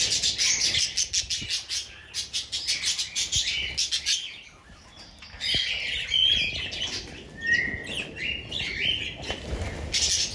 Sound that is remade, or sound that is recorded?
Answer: recorded